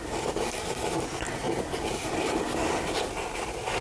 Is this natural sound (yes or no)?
yes